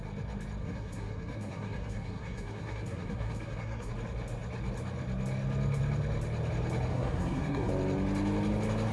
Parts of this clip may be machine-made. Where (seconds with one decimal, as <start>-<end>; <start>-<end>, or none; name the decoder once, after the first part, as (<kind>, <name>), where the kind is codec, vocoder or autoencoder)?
0.6-3.9 (codec, SNAC); 6.9-7.7